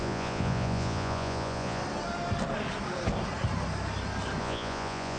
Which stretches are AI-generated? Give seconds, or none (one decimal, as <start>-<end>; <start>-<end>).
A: 0.0-1.8; 4.4-5.2